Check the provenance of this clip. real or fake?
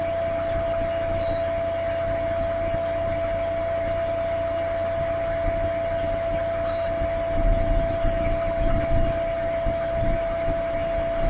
real